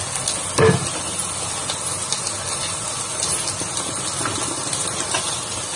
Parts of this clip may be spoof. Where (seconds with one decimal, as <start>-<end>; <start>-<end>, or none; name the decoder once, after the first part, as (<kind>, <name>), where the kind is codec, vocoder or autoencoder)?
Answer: none